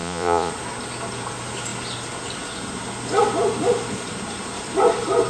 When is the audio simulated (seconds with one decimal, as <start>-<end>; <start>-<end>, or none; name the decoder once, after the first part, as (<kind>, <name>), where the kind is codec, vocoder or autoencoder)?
0.0-0.5 (vocoder, Vocos)